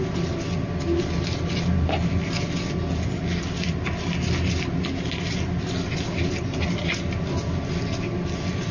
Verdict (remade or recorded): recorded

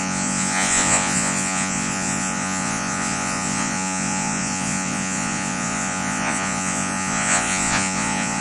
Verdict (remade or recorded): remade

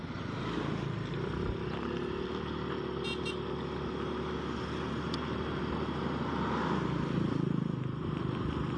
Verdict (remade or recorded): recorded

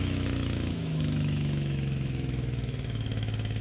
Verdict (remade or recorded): remade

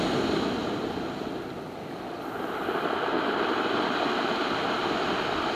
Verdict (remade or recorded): remade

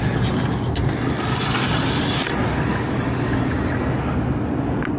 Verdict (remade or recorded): recorded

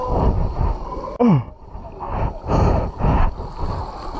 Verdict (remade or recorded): recorded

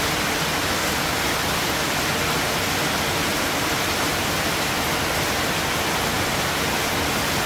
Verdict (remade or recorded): recorded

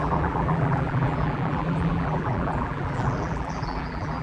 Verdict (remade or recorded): remade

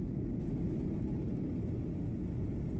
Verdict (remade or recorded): recorded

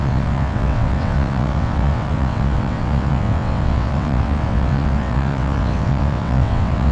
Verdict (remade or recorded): remade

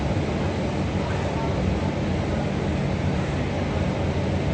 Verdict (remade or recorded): recorded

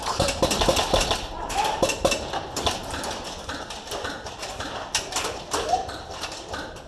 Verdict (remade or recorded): recorded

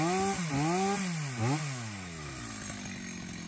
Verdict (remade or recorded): recorded